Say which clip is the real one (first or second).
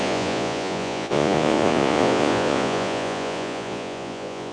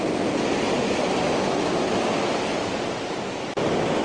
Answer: second